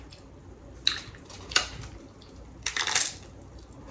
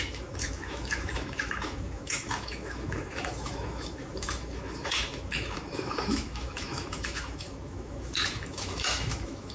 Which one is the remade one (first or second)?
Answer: second